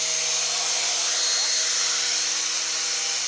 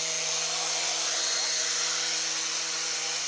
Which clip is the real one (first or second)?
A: first